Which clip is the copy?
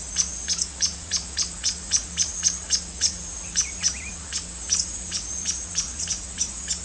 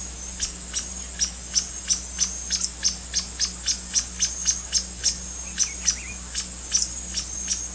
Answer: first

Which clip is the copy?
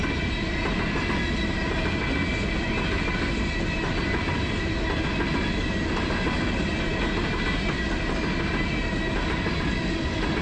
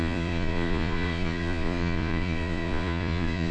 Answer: second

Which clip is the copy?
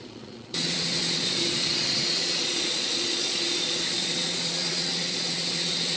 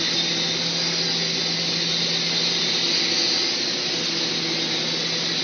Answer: first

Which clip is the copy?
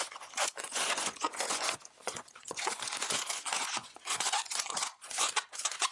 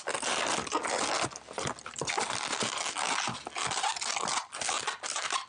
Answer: first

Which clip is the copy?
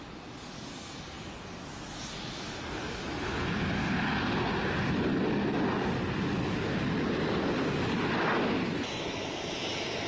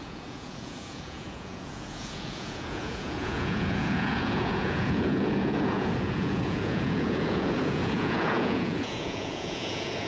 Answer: second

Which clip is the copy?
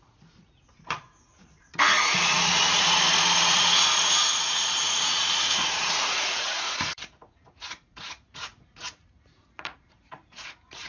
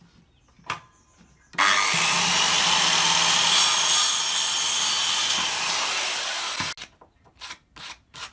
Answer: first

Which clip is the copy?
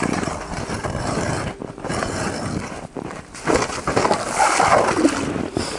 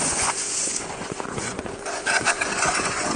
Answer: second